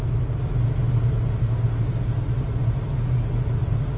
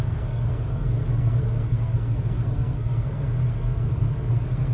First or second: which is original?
first